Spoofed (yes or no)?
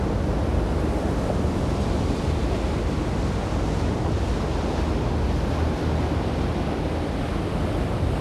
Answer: no